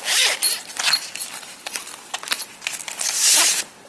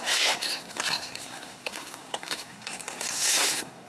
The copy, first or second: second